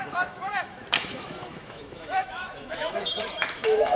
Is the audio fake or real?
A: fake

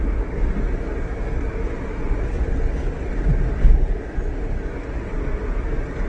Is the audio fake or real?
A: real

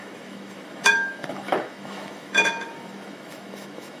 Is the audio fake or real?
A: fake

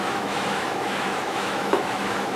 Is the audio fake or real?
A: fake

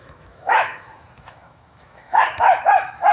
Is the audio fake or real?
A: fake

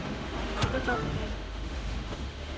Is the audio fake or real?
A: fake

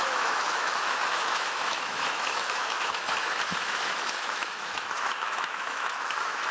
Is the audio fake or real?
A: fake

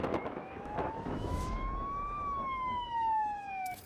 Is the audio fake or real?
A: fake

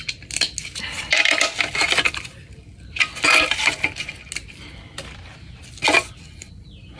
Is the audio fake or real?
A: real